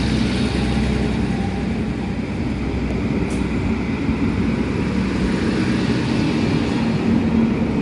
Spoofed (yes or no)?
no